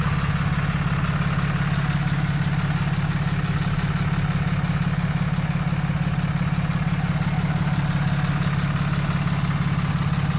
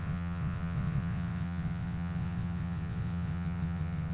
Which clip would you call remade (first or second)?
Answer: second